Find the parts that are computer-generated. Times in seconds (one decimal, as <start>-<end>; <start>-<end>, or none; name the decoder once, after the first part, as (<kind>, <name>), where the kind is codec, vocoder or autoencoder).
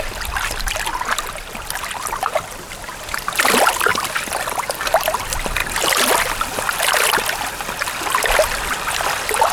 none